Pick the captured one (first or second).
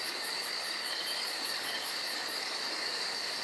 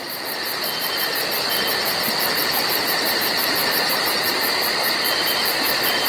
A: second